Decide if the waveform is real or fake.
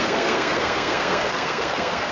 fake